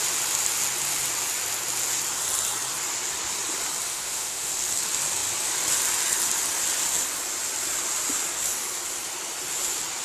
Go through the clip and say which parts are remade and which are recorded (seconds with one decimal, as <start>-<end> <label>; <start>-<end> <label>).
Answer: 0.0-3.9 recorded; 3.9-4.5 remade; 4.5-10.0 recorded